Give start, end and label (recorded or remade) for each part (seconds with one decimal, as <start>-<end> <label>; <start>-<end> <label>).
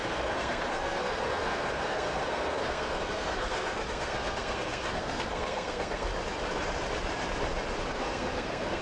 0.0-6.1 remade; 6.1-7.9 recorded; 7.9-8.8 remade